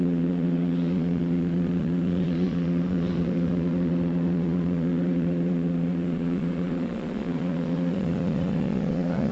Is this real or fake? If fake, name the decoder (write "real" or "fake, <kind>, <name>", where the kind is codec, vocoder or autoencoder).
fake, vocoder, Vocos